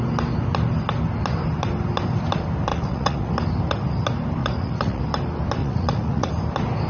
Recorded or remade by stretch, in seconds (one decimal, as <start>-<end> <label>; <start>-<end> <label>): 0.0-2.7 recorded; 2.7-3.3 remade; 3.3-4.4 recorded; 4.4-5.0 remade; 5.0-5.6 recorded; 5.6-6.3 remade; 6.3-6.9 recorded